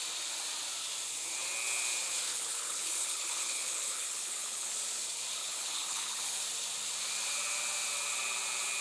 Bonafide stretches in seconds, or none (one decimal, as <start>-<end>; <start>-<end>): 0.0-2.3; 4.7-5.4; 6.2-8.8